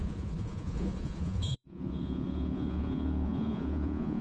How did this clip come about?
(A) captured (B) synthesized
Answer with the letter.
B